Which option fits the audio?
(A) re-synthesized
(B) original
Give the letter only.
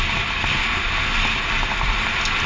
B